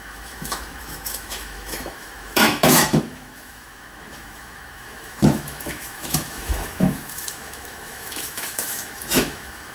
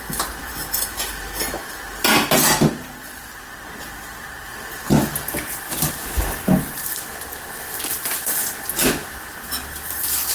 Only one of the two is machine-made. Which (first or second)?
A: first